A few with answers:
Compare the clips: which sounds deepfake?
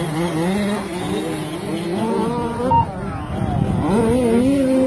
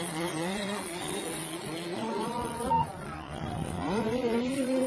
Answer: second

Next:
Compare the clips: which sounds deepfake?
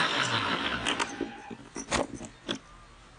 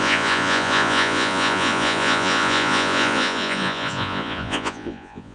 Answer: second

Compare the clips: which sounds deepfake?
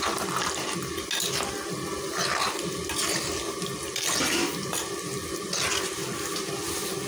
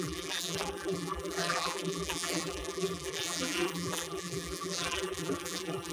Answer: second